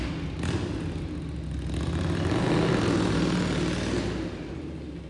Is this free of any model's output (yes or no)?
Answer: yes